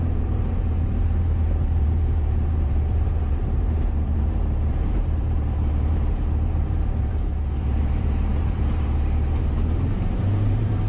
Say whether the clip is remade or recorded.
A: remade